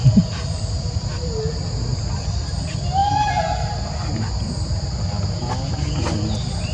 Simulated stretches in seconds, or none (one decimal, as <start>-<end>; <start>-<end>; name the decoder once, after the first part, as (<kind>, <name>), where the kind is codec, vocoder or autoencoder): none